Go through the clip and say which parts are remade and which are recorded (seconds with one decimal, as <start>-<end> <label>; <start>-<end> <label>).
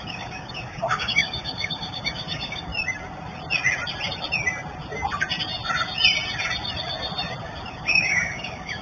0.0-2.7 remade; 2.7-7.7 recorded; 7.7-8.8 remade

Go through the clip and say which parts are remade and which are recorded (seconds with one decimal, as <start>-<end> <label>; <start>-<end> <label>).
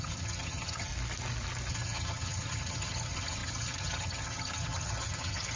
0.0-0.9 remade; 0.9-1.7 recorded; 1.7-5.6 remade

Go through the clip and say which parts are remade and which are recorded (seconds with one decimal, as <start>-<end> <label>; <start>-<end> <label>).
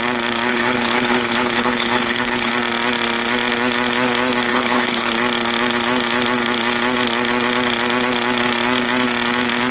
0.0-0.5 recorded; 0.5-2.5 remade; 2.5-4.5 recorded; 4.5-5.1 remade; 5.1-9.7 recorded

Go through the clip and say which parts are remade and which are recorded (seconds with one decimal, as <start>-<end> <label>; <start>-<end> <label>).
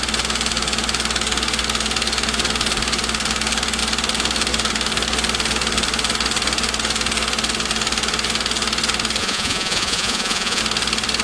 0.0-9.2 recorded; 9.2-10.6 remade; 10.6-11.2 recorded